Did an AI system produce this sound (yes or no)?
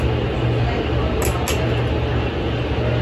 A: no